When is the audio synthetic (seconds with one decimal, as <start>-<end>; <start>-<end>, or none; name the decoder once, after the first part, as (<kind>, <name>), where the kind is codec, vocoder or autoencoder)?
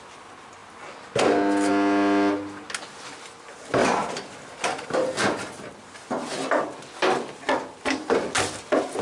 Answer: none